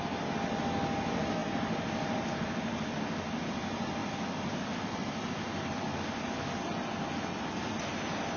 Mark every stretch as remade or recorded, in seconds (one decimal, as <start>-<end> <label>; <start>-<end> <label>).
0.0-4.0 recorded; 4.0-6.0 remade; 6.0-8.4 recorded